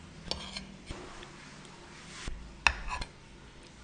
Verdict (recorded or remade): recorded